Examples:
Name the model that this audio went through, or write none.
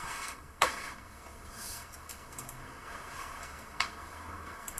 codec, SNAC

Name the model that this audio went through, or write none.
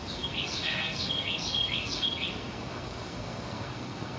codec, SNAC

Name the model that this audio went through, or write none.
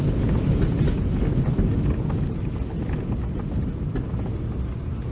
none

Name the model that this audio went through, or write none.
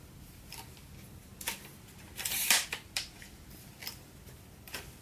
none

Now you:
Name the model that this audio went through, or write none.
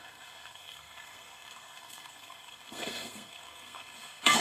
codec, SNAC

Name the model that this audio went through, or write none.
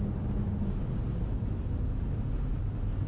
none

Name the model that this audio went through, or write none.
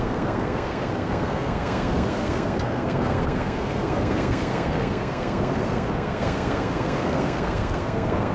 codec, SNAC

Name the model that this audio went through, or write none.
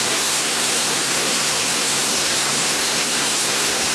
codec, SNAC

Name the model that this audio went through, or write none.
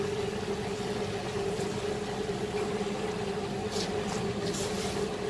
none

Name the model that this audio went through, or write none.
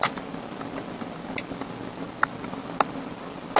none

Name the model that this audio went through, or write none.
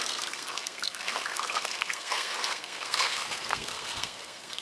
codec, SNAC